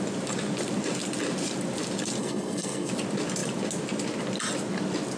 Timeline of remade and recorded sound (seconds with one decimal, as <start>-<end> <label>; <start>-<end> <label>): 0.0-2.2 recorded; 2.2-2.9 remade; 2.9-5.2 recorded

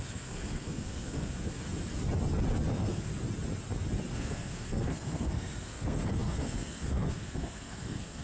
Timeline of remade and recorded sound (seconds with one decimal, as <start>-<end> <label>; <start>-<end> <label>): 0.0-1.6 remade; 1.6-2.7 recorded; 2.7-3.1 remade; 3.1-4.1 recorded; 4.1-8.2 remade

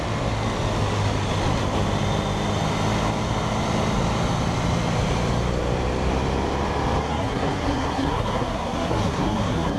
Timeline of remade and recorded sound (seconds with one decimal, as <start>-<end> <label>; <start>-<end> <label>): 0.0-7.0 recorded; 7.0-9.8 remade